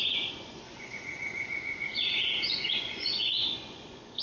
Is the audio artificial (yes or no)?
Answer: yes